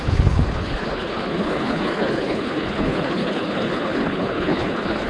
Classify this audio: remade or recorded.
remade